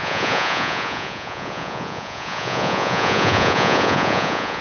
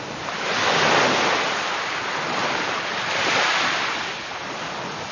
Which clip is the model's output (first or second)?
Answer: first